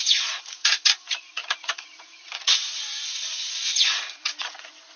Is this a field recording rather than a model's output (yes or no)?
no